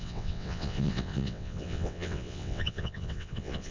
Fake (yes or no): yes